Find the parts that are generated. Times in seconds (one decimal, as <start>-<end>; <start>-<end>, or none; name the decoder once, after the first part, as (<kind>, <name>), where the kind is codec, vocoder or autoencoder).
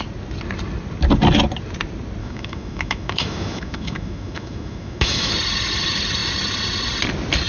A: 2.2-5.3 (autoencoder, DAC-VAE)